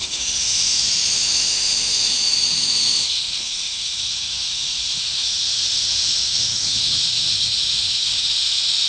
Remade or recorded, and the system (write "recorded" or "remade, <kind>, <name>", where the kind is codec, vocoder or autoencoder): remade, autoencoder, DAC-VAE